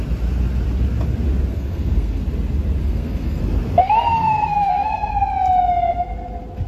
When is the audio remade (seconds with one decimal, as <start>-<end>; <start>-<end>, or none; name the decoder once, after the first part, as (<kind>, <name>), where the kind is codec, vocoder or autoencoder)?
1.5-2.2 (codec, SNAC); 2.8-3.4; 3.8-5.1